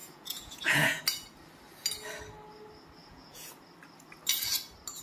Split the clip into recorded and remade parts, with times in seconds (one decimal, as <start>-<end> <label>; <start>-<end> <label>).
0.0-1.0 remade; 1.0-3.0 recorded; 3.0-3.5 remade; 3.5-5.0 recorded